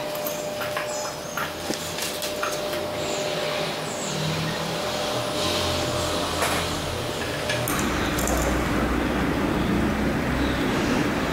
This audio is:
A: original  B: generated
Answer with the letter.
A